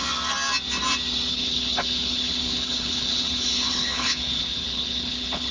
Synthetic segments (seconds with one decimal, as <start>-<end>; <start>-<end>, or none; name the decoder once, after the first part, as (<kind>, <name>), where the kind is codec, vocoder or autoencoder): 1.3-5.5 (codec, HILCodec)